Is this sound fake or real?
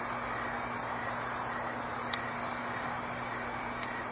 real